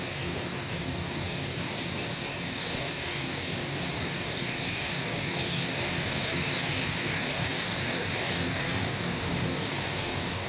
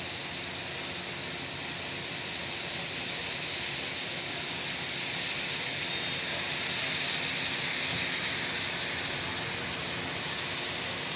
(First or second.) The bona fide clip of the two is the second